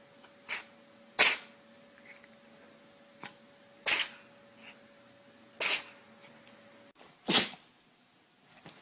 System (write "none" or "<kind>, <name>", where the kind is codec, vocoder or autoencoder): none